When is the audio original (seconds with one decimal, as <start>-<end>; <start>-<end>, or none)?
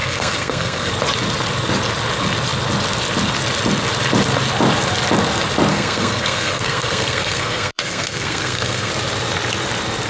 0.9-5.7; 8.9-10.1